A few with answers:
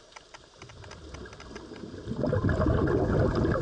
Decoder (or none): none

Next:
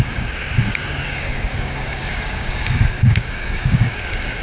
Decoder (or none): codec, DAC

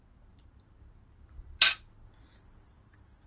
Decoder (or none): none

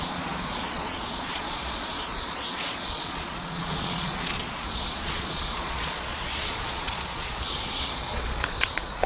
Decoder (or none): vocoder, Vocos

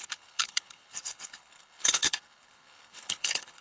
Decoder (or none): codec, HILCodec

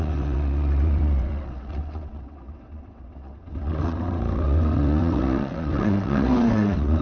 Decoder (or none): vocoder, WaveNeXt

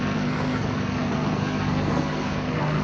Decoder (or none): codec, SNAC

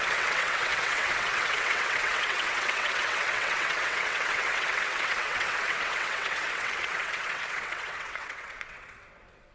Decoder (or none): vocoder, WaveNeXt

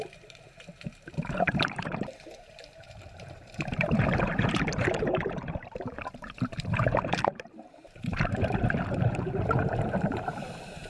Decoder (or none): vocoder, BigVGAN v2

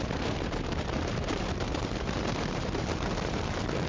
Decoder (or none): vocoder, BigVGAN v2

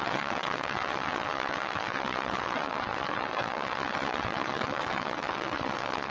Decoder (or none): vocoder, WaveNeXt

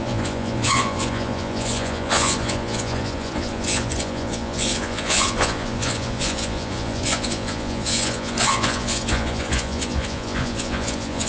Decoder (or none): vocoder, Vocos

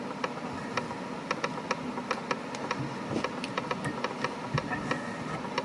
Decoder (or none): none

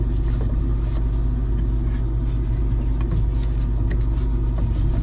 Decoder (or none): none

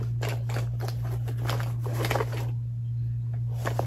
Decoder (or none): none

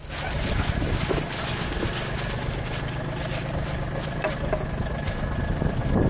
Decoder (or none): none